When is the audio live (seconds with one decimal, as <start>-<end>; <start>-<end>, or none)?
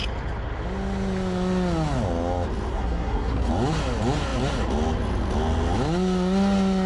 0.0-2.7; 3.5-6.9